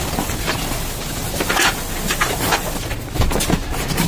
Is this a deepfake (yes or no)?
no